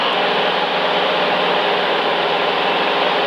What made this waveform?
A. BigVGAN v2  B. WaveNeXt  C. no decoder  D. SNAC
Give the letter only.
C